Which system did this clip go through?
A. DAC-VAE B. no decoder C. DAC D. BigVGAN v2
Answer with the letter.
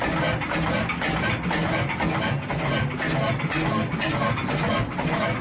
B